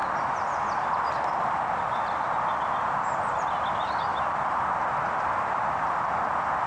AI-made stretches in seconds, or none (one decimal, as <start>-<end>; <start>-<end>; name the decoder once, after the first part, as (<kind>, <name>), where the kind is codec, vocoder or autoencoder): none